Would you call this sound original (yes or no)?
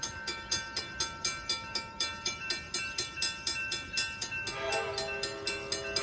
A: yes